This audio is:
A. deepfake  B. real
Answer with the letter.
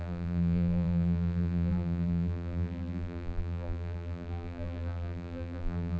A